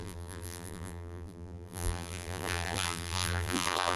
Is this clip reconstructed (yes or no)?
yes